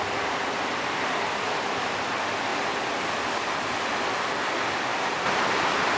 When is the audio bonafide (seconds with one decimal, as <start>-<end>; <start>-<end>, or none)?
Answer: none

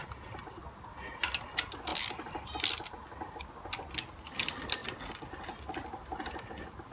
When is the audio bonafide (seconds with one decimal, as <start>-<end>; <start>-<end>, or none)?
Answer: 0.0-6.9

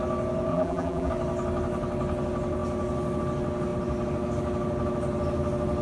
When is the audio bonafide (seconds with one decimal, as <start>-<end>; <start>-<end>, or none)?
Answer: 0.0-0.5; 1.1-5.8

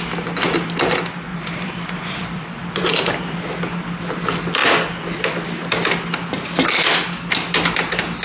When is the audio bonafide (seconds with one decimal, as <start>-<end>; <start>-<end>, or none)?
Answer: 0.0-1.3; 3.5-8.2

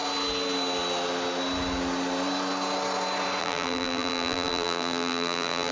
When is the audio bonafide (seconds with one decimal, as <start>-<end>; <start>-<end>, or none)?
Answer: 0.0-3.4

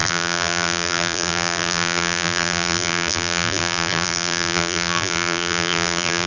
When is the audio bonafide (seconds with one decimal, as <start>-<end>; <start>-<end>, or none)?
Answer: none

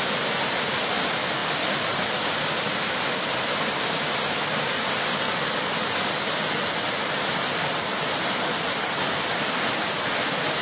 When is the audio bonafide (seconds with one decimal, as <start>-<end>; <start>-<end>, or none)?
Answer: 0.0-10.6

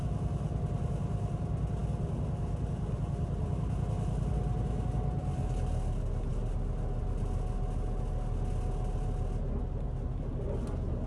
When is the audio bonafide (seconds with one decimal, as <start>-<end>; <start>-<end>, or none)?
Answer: 0.0-11.1